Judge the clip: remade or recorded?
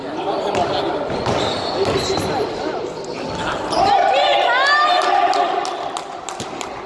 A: recorded